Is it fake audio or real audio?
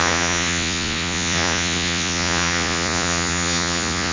fake